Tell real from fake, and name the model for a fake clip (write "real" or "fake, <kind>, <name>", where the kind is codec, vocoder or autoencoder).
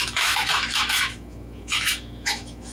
fake, autoencoder, DAC-VAE